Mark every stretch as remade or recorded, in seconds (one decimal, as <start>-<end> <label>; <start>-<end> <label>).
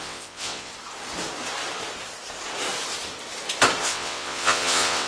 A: 0.0-0.7 remade; 0.7-3.8 recorded; 3.8-5.1 remade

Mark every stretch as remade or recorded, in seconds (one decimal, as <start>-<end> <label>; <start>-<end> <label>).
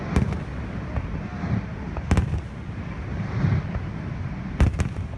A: 0.0-5.2 recorded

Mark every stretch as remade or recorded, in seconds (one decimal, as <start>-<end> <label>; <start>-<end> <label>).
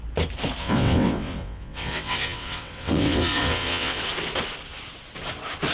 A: 0.0-0.6 recorded; 0.6-4.0 remade; 4.0-5.7 recorded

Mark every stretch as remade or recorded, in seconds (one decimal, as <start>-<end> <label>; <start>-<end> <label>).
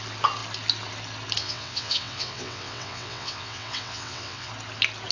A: 0.0-1.4 recorded; 1.4-4.5 remade; 4.5-5.1 recorded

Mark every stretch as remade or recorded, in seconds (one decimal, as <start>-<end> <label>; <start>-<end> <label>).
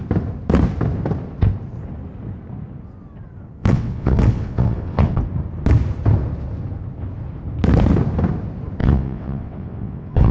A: 0.0-3.6 recorded; 3.6-5.2 remade; 5.2-8.8 recorded; 8.8-10.3 remade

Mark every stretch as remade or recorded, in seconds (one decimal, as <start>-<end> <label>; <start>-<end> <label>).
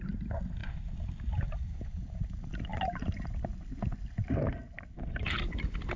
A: 0.0-6.0 recorded